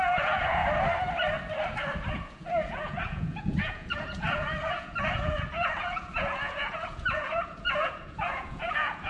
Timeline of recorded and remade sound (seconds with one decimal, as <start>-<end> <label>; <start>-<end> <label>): 0.0-0.6 remade; 0.6-2.1 recorded; 2.1-9.1 remade